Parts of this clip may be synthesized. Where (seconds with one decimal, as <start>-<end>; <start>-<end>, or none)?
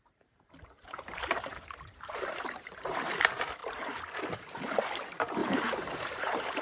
0.0-3.6; 4.2-6.6